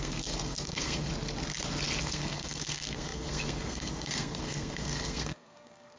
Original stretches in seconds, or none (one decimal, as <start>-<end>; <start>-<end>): 1.1-2.0